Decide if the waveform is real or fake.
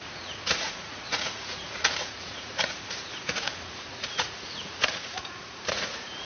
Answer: fake